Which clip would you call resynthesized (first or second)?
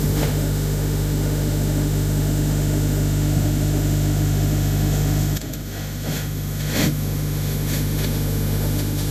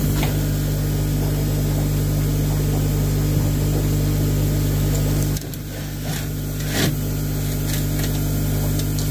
first